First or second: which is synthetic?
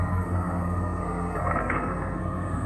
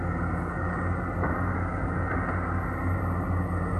first